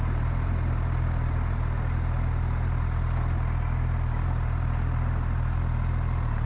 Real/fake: real